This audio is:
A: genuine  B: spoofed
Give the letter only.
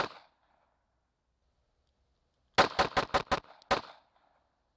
A